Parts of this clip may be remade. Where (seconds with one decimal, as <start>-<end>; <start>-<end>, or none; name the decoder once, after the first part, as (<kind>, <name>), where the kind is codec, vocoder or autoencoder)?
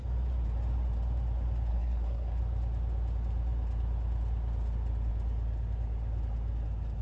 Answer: 1.7-2.4 (codec, SNAC)